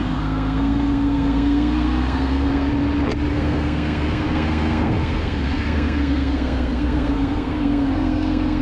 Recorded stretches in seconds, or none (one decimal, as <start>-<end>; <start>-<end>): 2.7-3.3